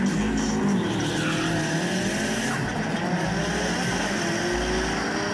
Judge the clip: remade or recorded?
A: recorded